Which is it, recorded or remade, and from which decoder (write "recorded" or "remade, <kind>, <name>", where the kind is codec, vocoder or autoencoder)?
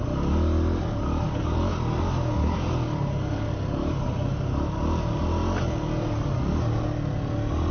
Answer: recorded